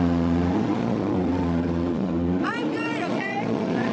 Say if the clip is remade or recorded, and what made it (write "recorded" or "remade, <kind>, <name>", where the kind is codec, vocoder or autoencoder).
remade, vocoder, Vocos